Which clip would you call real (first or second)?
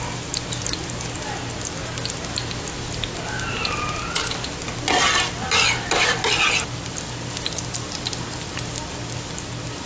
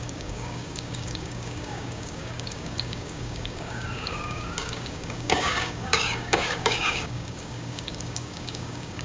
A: first